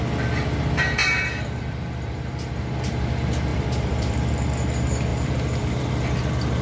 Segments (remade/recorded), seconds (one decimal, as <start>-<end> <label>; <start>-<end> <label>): 0.0-1.0 recorded; 1.0-2.5 remade; 2.5-3.5 recorded; 3.5-4.3 remade; 4.3-5.1 recorded; 5.1-5.9 remade; 5.9-6.6 recorded